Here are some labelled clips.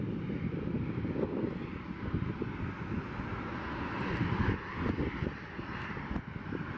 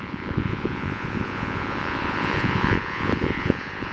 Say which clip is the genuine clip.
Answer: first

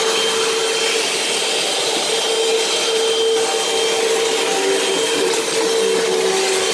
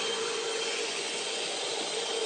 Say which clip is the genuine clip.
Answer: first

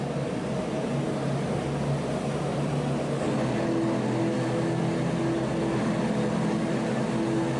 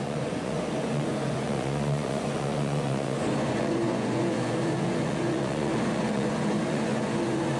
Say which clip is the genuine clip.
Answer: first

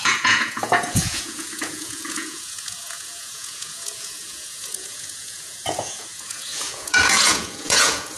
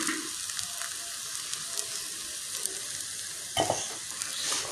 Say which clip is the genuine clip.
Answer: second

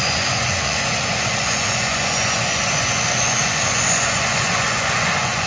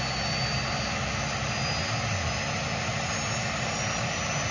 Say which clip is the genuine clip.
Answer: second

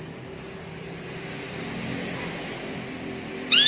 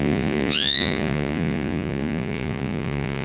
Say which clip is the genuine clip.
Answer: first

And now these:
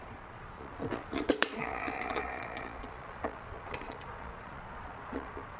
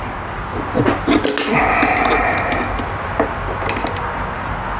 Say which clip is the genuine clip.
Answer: second